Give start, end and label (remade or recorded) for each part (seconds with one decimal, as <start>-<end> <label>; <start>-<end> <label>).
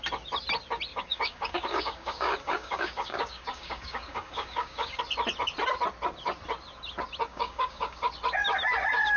0.0-0.9 recorded; 0.9-5.0 remade; 5.0-7.3 recorded; 7.3-8.1 remade; 8.1-9.2 recorded